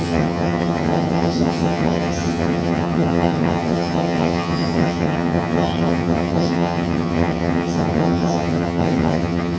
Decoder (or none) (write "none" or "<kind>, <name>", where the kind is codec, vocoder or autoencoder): vocoder, HiFi-GAN